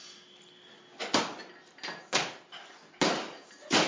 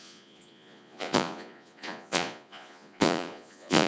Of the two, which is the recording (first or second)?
first